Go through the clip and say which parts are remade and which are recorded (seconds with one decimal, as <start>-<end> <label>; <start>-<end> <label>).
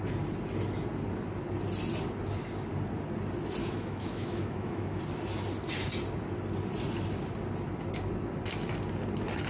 0.0-3.6 recorded; 3.6-5.0 remade; 5.0-9.5 recorded